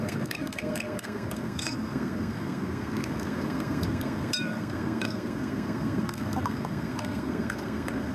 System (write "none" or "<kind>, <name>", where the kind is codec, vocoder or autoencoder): codec, SNAC